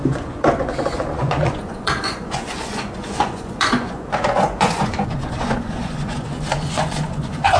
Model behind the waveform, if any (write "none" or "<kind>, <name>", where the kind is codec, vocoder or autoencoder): vocoder, Vocos